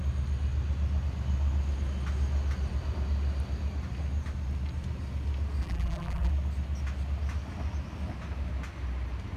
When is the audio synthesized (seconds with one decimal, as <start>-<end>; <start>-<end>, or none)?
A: 5.6-6.3